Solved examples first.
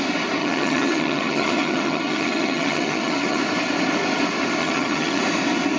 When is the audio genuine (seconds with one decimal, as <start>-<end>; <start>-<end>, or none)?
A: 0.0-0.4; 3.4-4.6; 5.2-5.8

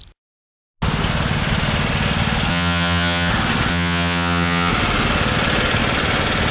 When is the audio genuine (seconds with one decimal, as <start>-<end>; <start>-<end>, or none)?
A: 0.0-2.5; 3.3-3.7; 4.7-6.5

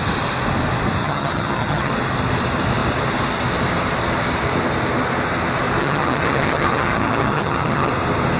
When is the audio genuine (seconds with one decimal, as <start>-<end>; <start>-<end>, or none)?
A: 0.0-1.0; 1.9-5.8; 7.9-8.4

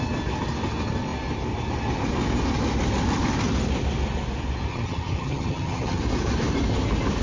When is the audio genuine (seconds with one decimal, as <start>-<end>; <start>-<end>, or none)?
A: 0.0-4.7; 6.0-7.2